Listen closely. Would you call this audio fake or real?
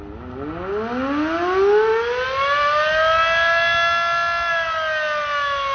real